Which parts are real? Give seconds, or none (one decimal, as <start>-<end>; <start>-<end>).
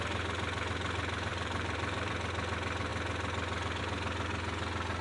0.0-1.3; 2.1-5.0